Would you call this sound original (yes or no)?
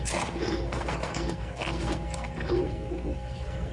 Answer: no